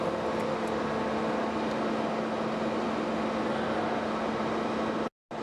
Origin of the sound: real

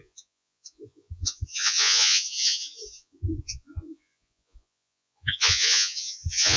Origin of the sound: fake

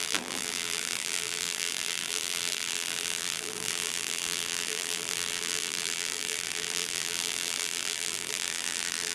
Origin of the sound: fake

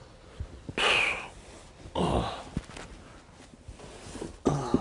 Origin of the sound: real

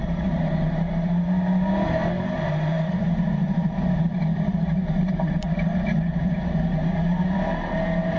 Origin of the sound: fake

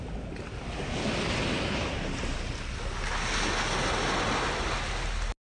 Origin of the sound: real